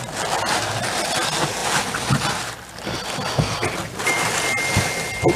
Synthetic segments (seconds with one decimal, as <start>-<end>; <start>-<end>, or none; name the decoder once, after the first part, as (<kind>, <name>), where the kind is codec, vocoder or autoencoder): none